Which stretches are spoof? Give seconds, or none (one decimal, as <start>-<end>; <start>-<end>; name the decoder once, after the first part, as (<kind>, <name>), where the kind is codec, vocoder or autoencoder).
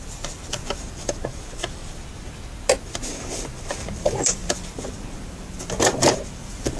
0.0-1.8 (vocoder, BigVGAN v2); 3.2-6.8